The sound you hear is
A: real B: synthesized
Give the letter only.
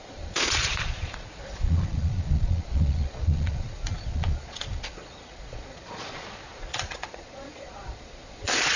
B